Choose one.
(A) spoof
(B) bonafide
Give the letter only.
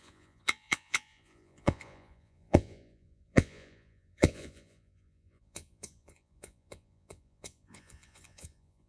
A